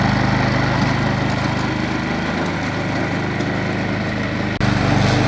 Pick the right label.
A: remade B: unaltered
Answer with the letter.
B